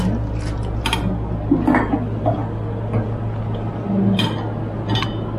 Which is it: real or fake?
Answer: real